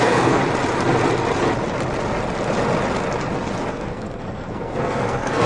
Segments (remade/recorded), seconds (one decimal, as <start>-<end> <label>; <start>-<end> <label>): 0.0-0.4 remade; 0.4-3.7 recorded; 3.7-5.5 remade